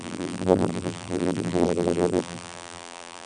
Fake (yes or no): yes